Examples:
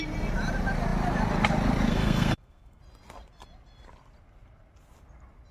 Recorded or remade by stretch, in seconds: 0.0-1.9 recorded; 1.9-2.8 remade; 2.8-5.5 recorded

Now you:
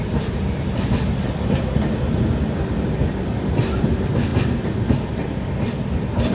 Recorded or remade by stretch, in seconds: 0.0-6.3 recorded

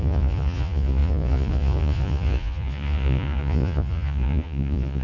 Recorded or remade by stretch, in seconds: 0.0-5.0 remade

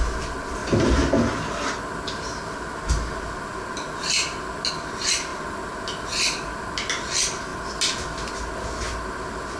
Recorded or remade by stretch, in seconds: 0.0-9.6 recorded

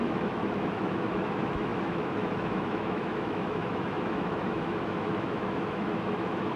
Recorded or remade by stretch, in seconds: 0.0-6.6 remade

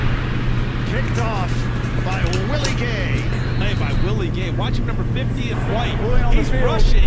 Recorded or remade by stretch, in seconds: 0.0-7.1 recorded

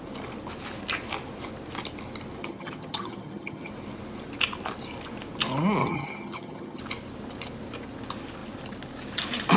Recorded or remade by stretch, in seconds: 0.0-2.4 recorded; 2.4-3.7 remade; 3.7-5.8 recorded; 5.8-6.8 remade; 6.8-9.6 recorded